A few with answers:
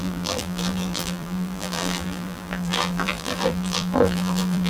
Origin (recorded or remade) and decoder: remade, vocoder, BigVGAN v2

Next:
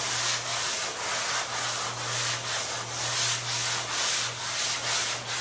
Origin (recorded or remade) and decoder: recorded